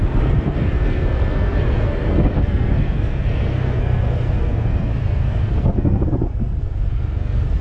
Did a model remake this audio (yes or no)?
yes